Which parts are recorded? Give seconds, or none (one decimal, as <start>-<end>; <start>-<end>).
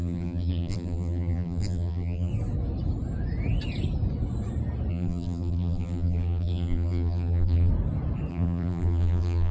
2.3-4.9; 7.7-8.3